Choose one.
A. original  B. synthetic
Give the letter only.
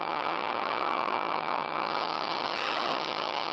B